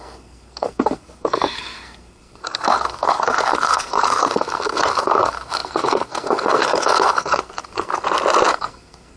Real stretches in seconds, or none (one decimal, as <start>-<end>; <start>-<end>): 7.9-8.5